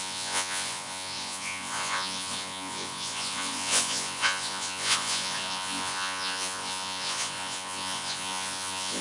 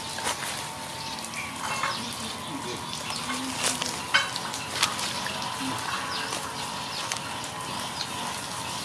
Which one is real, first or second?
second